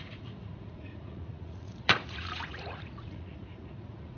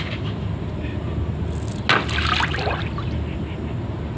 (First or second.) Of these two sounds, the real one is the second